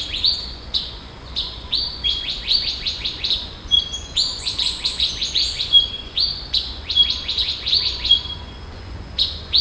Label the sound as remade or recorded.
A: remade